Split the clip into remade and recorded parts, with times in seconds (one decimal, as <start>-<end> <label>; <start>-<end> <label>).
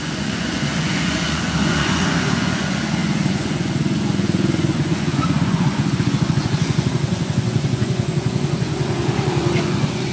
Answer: 0.0-10.1 remade